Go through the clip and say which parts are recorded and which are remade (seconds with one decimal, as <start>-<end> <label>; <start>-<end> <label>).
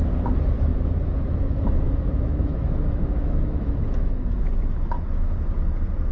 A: 0.0-0.7 recorded; 0.7-4.4 remade; 4.4-6.1 recorded